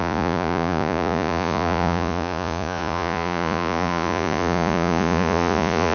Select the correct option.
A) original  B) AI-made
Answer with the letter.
B